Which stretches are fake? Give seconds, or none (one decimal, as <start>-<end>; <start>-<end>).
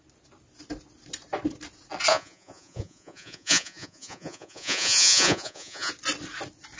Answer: 2.1-5.9